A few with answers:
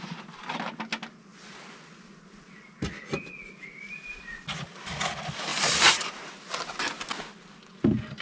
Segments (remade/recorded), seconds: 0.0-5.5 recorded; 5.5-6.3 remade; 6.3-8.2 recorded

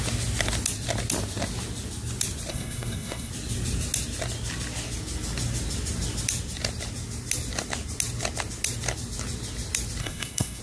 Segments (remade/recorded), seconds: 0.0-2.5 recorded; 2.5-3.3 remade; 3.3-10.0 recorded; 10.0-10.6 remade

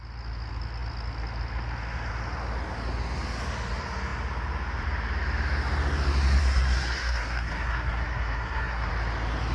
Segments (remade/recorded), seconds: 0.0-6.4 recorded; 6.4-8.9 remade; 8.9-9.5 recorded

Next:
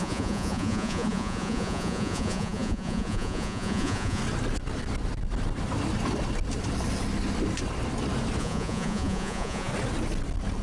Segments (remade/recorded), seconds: 0.0-4.2 remade; 4.2-8.4 recorded; 8.4-9.7 remade; 9.7-10.6 recorded

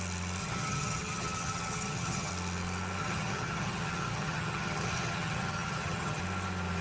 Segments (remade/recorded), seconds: 0.0-0.4 recorded; 0.4-2.3 remade; 2.3-3.0 recorded; 3.0-6.2 remade; 6.2-6.8 recorded

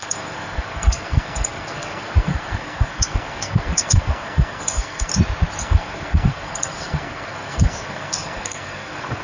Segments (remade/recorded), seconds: 0.0-5.1 remade; 5.1-5.6 recorded; 5.6-9.2 remade